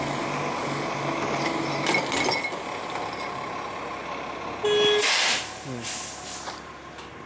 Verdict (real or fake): real